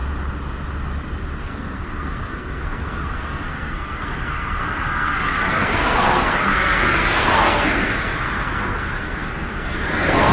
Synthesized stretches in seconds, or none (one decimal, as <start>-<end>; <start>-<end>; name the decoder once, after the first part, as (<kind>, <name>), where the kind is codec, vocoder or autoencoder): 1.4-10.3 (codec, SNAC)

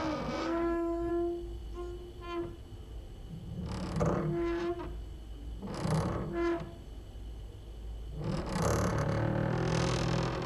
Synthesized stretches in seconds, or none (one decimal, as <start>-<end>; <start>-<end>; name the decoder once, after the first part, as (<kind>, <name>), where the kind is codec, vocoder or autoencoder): 0.4-1.1 (codec, SNAC)

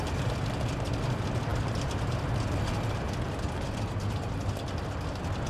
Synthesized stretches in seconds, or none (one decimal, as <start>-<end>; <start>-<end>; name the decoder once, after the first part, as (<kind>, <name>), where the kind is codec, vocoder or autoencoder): none

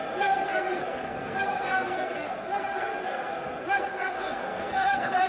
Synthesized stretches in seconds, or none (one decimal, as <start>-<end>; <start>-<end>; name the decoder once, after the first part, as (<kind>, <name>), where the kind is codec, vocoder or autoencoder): 0.0-5.3 (codec, SNAC)

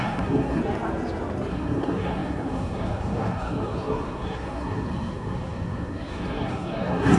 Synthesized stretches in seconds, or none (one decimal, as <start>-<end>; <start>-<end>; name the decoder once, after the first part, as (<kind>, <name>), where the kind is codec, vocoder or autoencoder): 0.0-0.6 (codec, SNAC); 1.5-7.2

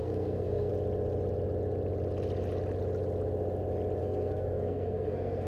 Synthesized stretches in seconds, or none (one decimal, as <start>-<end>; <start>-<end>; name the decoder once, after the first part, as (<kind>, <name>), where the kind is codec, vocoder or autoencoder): 0.0-0.7 (codec, SNAC); 4.0-5.5

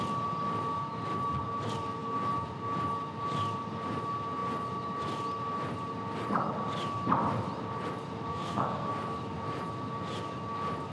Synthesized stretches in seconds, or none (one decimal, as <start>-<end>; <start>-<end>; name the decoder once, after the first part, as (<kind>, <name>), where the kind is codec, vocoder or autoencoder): 8.3-8.9 (codec, SNAC)

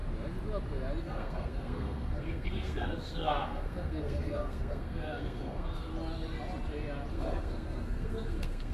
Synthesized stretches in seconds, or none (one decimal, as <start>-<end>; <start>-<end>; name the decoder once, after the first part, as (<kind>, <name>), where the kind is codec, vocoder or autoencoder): 1.0-5.9 (codec, SNAC); 7.1-8.7